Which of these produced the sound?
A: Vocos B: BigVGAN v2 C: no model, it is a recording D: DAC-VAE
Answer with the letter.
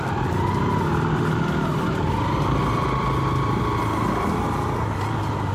C